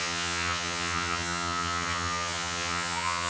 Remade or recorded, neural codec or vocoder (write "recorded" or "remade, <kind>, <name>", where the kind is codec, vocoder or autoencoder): remade, vocoder, HiFi-GAN